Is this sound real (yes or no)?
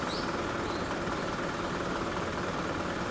yes